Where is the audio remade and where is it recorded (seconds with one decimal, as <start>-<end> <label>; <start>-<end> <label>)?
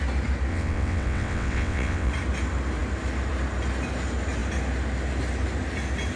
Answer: 0.0-0.5 recorded; 0.5-2.1 remade; 2.1-6.2 recorded